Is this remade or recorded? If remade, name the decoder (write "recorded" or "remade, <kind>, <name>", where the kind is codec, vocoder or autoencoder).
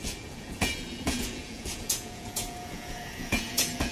remade, vocoder, Vocos